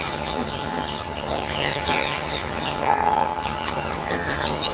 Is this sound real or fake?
fake